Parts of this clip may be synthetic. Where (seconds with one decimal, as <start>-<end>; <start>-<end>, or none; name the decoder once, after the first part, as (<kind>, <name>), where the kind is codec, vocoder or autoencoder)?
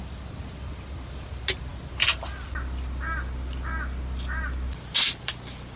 none